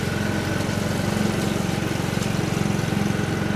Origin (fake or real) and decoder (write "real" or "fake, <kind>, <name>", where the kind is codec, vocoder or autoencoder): real